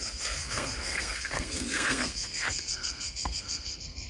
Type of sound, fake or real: fake